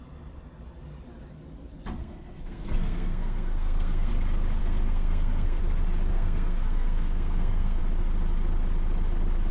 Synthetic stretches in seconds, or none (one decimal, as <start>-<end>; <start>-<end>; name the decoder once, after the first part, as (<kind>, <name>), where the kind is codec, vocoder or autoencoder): 2.0-4.1 (codec, SNAC); 4.6-5.6; 6.1-7.8

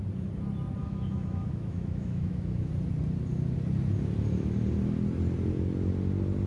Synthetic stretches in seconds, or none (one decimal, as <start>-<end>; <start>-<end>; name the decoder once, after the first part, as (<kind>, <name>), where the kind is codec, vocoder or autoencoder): 0.8-2.7 (autoencoder, DAC-VAE)